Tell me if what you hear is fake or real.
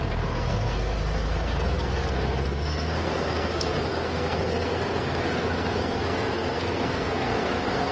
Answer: fake